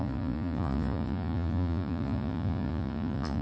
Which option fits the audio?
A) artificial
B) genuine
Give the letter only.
A